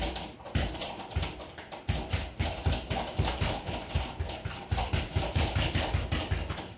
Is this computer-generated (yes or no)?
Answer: no